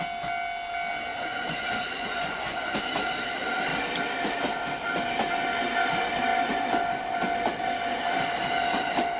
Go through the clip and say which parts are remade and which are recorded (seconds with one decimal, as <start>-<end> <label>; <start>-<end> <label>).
0.0-1.1 recorded; 1.1-2.8 remade; 2.8-9.2 recorded